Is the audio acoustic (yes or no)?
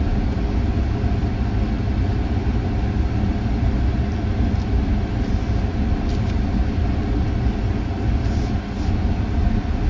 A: yes